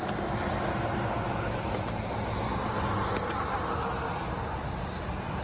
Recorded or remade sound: recorded